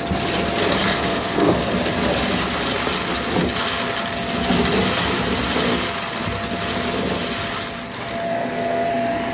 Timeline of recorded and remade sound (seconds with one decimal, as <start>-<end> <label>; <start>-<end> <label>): 0.0-0.8 recorded; 0.8-1.7 remade; 1.7-8.3 recorded; 8.3-8.9 remade; 8.9-9.3 recorded

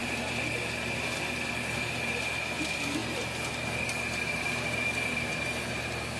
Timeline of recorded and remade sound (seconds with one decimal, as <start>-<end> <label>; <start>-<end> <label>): 0.0-1.2 recorded; 1.2-6.2 remade

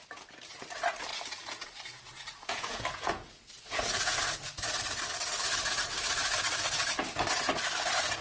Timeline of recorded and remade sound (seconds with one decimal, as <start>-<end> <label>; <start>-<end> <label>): 0.0-1.1 recorded; 1.1-4.2 remade; 4.2-8.2 recorded